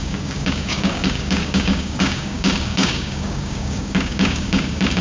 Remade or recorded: remade